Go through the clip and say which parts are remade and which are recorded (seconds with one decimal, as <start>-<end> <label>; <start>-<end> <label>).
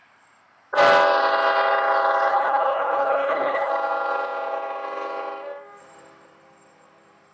0.0-2.3 recorded; 2.3-3.7 remade; 3.7-7.3 recorded